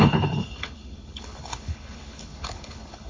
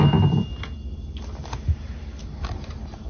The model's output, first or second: first